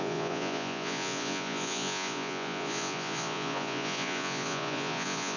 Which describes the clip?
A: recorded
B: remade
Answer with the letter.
B